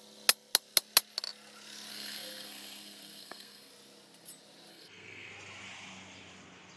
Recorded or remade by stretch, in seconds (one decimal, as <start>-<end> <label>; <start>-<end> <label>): 0.0-1.9 recorded; 1.9-3.7 remade; 3.7-4.7 recorded; 4.7-5.3 remade; 5.3-6.8 recorded